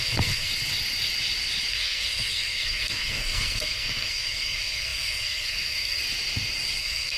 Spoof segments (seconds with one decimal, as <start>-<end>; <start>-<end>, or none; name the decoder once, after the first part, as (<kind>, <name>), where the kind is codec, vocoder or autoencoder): 0.0-0.5 (codec, SNAC); 1.7-6.0; 6.8-7.2